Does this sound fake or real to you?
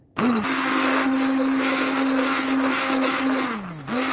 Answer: real